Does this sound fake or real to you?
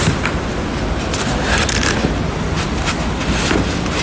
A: real